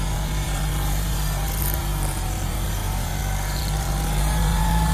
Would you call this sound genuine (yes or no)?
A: no